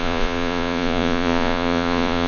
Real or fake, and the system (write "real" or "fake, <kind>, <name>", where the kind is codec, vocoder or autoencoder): fake, vocoder, Vocos